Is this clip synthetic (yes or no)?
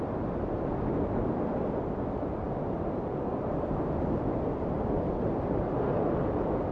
no